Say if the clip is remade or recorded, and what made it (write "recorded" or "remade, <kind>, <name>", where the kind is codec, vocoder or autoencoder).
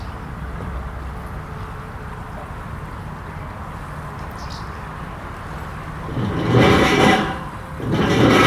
recorded